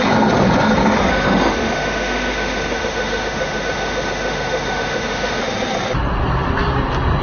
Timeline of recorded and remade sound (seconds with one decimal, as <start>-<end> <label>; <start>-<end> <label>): 0.0-1.1 recorded; 1.1-5.4 remade; 5.4-7.2 recorded